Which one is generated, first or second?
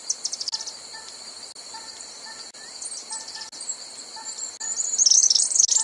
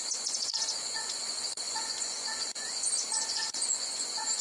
second